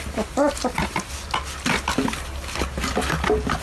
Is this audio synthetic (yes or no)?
no